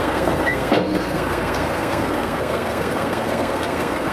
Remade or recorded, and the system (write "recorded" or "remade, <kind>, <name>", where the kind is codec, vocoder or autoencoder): remade, codec, SNAC